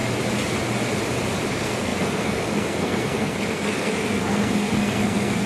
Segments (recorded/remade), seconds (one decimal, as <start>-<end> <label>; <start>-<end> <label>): 0.0-1.5 recorded; 1.5-5.5 remade